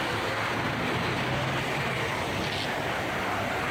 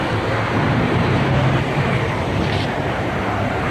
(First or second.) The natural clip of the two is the first